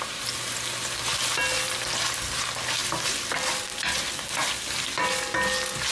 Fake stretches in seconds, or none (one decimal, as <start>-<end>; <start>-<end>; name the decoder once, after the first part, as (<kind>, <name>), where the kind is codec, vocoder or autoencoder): 2.8-4.0 (vocoder, BigVGAN v2)